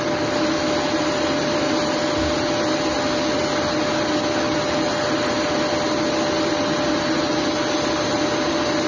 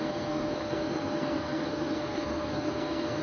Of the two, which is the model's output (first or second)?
second